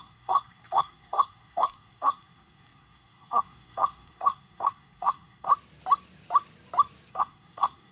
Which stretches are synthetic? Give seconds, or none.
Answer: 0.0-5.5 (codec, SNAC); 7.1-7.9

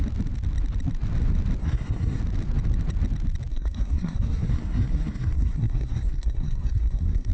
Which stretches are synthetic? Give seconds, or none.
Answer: 1.6-2.2 (codec, SNAC); 3.5-7.3

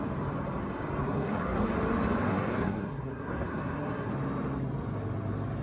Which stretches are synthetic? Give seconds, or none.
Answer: 1.0-1.7 (codec, SNAC); 2.3-4.1

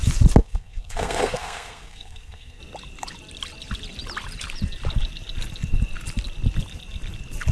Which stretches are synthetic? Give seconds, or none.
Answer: 0.4-2.6 (codec, SNAC)

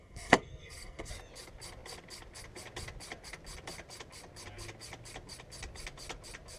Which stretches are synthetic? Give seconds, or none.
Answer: 0.0-1.1 (codec, SNAC)

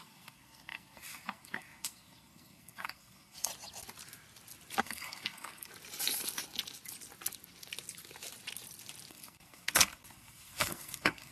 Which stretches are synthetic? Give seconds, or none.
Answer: 0.0-3.5 (codec, SNAC); 4.8-5.7; 9.1-11.3

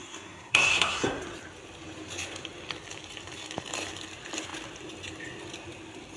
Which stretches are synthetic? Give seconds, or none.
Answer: 0.0-1.2 (codec, SNAC)

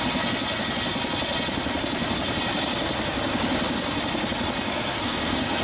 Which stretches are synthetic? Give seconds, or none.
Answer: 4.7-5.6 (codec, SNAC)